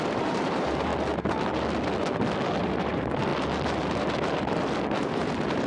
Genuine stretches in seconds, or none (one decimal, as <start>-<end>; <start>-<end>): 0.9-2.6; 3.3-5.0